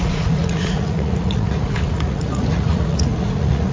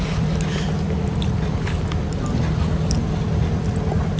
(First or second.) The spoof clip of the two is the first